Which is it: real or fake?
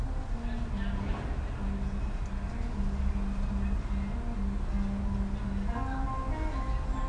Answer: real